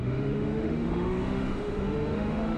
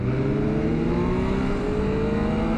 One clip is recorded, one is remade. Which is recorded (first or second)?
second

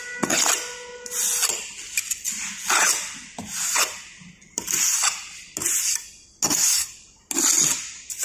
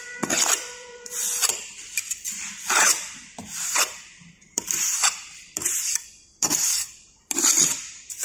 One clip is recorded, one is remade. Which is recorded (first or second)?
first